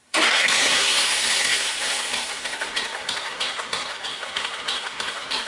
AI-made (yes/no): yes